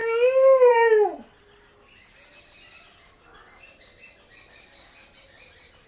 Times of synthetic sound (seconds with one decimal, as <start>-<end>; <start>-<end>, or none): none